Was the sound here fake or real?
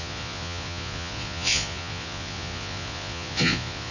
fake